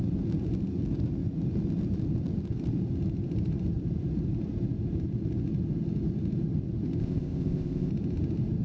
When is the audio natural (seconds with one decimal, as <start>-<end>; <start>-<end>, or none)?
0.0-7.0; 7.9-8.6